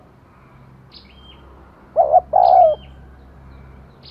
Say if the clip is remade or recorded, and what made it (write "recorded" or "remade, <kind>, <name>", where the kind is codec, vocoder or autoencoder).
recorded